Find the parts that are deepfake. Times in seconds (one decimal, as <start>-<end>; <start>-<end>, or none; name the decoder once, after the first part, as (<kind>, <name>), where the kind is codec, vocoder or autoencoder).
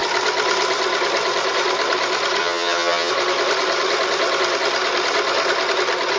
2.4-3.1 (vocoder, HiFi-GAN)